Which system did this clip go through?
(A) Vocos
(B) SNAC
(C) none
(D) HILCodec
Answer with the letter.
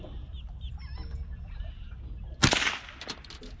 C